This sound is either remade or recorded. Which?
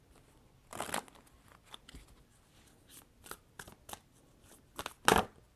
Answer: recorded